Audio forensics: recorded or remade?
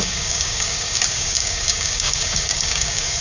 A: remade